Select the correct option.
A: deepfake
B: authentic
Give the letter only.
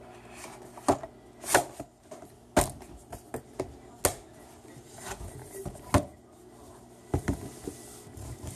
B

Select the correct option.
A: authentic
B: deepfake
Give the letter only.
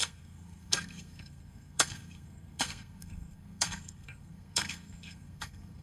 B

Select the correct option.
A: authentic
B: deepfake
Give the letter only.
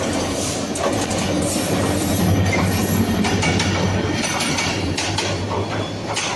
A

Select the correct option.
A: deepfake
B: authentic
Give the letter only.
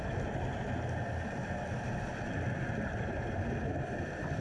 B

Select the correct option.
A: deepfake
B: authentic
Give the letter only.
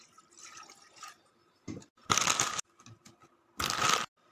B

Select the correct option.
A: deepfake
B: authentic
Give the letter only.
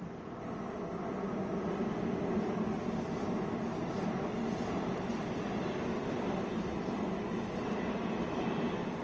B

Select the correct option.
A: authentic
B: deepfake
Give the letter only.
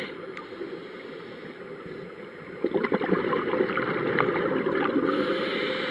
A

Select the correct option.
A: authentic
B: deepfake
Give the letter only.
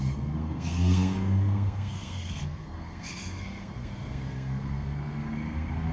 B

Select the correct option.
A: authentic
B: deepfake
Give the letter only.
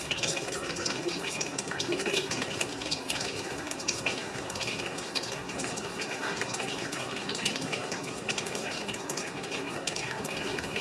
B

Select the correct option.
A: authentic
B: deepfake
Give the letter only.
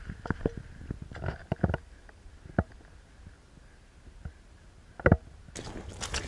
A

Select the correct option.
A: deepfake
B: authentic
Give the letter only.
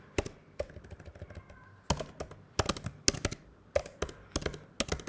B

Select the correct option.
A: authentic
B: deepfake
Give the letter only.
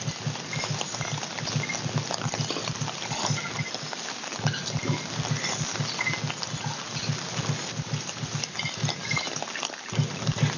A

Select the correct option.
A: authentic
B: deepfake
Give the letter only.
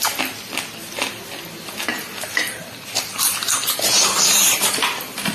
A